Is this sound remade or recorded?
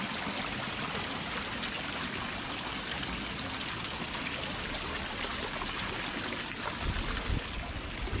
recorded